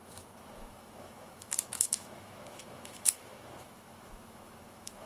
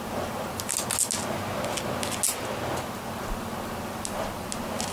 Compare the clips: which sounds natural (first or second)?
second